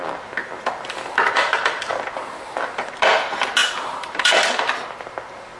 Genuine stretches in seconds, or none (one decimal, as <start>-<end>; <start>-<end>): 0.0-0.4; 2.6-3.6; 4.6-5.6